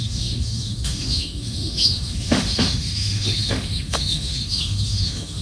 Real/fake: fake